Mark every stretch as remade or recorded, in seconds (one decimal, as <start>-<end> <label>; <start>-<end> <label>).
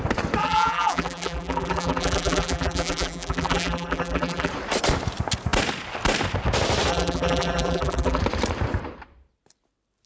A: 0.0-0.4 recorded; 0.4-4.5 remade; 4.5-6.9 recorded; 6.9-8.2 remade; 8.2-10.1 recorded